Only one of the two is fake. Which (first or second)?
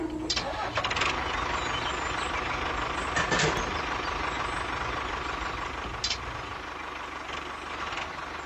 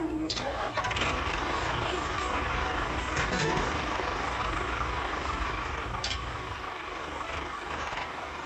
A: second